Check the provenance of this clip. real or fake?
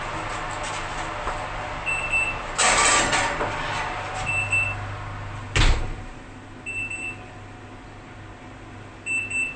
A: real